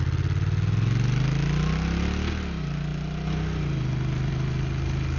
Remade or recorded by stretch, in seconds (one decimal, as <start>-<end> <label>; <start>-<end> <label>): 0.0-5.2 recorded